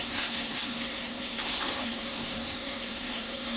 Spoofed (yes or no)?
yes